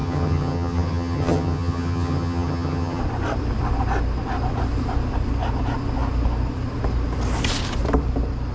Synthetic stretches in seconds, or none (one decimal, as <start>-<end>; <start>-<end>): 0.0-3.0